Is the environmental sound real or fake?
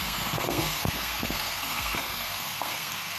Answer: fake